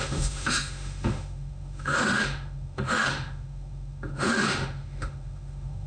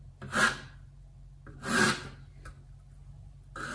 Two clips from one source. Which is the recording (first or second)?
second